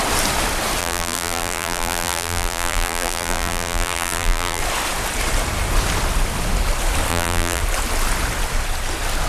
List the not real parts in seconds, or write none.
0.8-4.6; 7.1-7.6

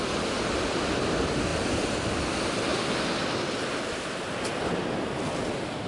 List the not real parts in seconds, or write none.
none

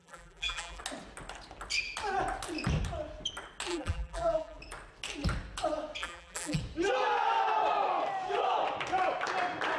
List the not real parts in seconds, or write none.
0.0-0.8; 3.7-4.6; 6.0-6.6

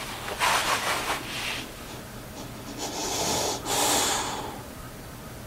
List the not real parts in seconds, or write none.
0.6-2.0; 3.0-4.9

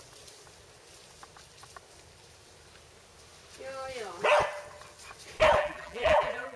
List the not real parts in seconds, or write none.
5.6-6.6